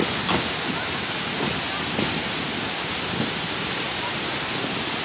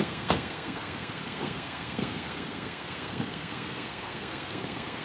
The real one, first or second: first